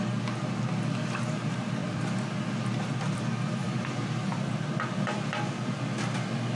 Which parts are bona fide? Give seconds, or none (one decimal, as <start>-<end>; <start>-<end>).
0.0-1.8; 5.8-6.6